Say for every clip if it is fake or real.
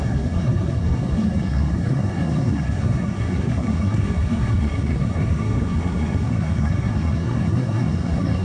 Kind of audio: fake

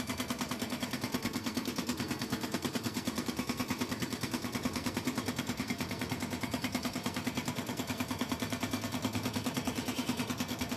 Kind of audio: fake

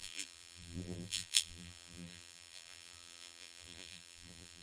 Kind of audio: fake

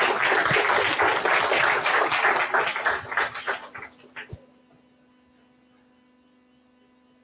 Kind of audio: real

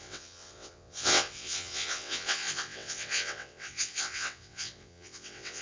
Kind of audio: fake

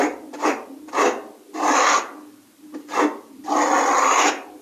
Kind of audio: real